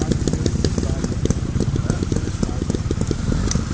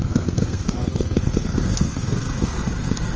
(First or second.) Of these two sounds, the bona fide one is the first